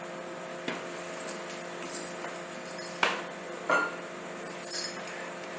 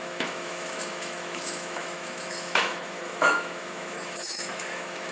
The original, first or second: first